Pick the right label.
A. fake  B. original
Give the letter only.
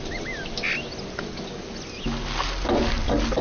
B